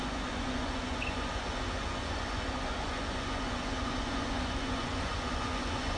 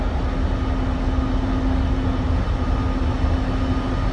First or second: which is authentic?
second